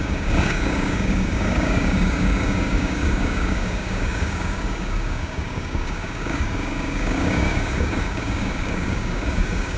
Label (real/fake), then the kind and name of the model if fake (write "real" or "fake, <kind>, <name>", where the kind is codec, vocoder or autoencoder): fake, codec, DAC